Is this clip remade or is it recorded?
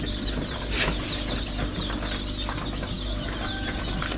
recorded